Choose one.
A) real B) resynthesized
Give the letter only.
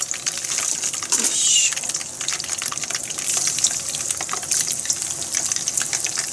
A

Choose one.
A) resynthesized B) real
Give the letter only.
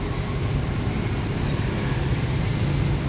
B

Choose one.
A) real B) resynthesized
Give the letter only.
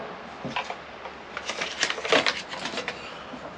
A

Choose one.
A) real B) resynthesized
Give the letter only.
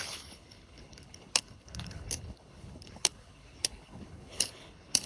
B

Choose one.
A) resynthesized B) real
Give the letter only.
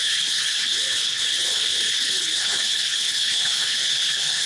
A